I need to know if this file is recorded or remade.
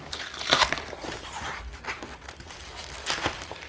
recorded